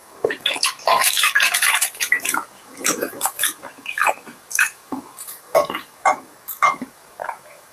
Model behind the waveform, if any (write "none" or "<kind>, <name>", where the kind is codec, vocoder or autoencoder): codec, DAC